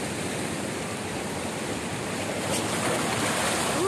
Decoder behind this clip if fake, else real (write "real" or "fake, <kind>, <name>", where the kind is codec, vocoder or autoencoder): real